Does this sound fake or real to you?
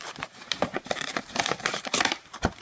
fake